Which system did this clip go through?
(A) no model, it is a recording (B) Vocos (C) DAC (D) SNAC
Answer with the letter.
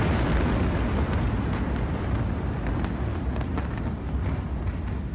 A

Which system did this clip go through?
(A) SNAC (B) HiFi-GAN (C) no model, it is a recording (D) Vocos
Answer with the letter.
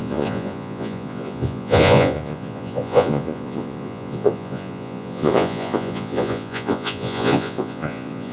D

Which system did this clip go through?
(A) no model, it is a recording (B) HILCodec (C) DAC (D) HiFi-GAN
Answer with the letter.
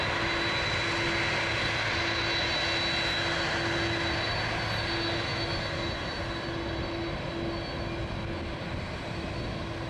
A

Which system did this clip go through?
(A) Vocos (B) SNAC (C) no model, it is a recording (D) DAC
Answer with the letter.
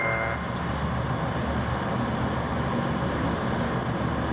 C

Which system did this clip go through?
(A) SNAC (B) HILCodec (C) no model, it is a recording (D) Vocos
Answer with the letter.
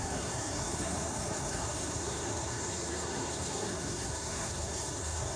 A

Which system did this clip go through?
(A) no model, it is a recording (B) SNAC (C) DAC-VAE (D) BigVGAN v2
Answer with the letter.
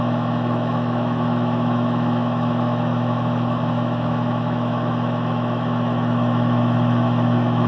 C